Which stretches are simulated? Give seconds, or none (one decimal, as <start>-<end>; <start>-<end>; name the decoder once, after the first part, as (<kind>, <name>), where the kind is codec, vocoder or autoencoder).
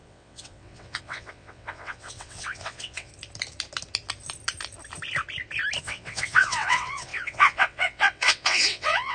0.0-3.1 (vocoder, WaveNeXt); 5.8-9.1